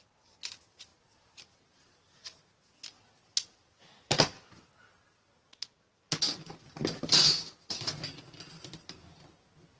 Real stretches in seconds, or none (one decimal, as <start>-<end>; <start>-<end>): 0.0-9.8